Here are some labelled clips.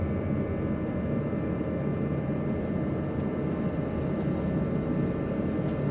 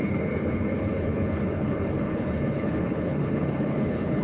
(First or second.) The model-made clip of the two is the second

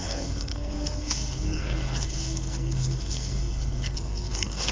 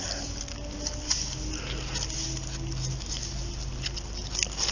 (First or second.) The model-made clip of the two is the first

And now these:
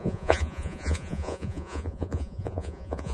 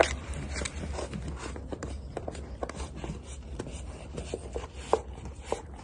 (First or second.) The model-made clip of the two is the first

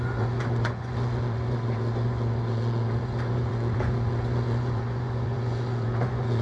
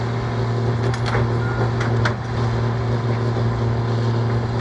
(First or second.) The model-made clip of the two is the first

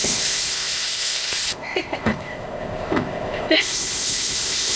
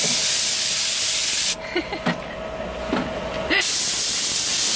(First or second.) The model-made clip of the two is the first